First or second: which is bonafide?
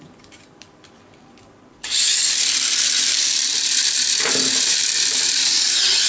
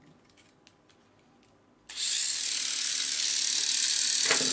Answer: second